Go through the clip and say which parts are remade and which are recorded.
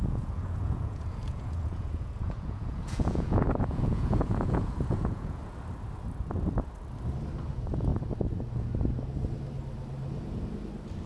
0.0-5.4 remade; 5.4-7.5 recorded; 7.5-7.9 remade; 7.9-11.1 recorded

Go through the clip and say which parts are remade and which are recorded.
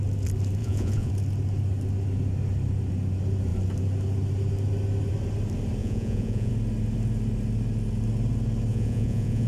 0.0-0.6 recorded; 0.6-1.1 remade; 1.1-5.8 recorded; 5.8-6.5 remade; 6.5-8.7 recorded; 8.7-9.5 remade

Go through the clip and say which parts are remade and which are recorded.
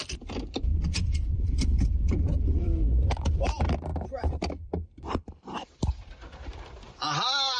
0.0-0.7 recorded; 0.7-1.9 remade; 1.9-3.9 recorded; 3.9-7.6 remade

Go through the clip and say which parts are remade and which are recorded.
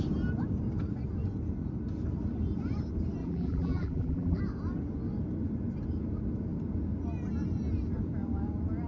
0.0-3.2 recorded; 3.2-4.4 remade; 4.4-8.9 recorded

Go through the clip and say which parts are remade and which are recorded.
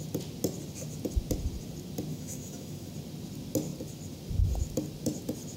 0.0-2.1 recorded; 2.1-2.9 remade; 2.9-5.6 recorded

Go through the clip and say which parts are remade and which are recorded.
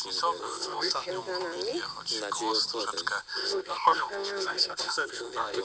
0.0-0.4 recorded; 0.4-1.1 remade; 1.1-3.2 recorded; 3.2-5.6 remade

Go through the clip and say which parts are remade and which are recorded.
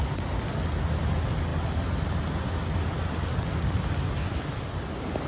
0.0-5.3 recorded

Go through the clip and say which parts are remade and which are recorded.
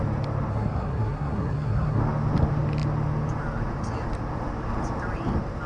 0.0-0.5 recorded; 0.5-2.0 remade; 2.0-5.7 recorded